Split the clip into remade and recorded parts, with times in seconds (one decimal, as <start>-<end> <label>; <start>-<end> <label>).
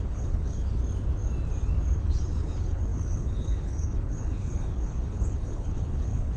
0.0-0.8 remade; 0.8-2.0 recorded; 2.0-6.4 remade